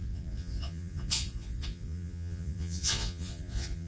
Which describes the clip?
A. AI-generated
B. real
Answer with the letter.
A